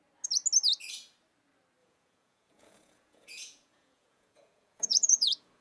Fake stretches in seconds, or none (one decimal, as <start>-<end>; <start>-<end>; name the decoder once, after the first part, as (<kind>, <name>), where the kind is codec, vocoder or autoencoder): 1.8-5.6 (vocoder, Vocos)